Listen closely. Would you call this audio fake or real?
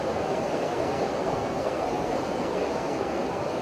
fake